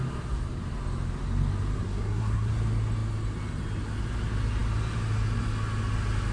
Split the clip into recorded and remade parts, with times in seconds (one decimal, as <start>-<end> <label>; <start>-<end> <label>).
0.0-1.8 recorded; 1.8-2.5 remade; 2.5-6.3 recorded